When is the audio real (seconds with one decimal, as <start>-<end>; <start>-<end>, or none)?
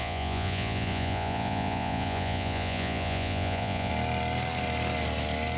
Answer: 3.9-5.6